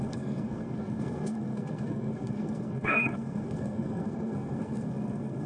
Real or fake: fake